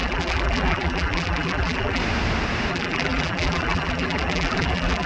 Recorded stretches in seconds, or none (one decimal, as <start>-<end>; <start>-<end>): 2.0-2.7